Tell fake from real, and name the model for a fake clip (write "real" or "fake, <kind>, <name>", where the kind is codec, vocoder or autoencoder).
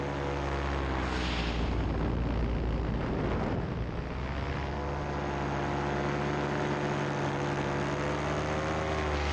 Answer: real